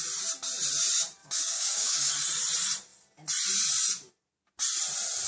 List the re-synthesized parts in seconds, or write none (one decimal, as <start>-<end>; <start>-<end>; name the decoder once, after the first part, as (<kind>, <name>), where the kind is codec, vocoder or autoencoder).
1.2-2.1 (codec, DAC)